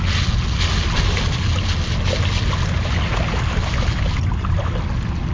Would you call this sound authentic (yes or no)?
yes